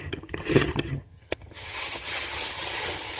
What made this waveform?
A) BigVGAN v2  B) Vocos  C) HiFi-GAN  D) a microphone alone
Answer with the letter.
C